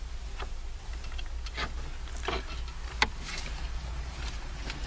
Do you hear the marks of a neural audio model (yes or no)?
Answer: no